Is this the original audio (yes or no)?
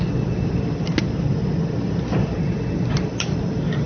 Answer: yes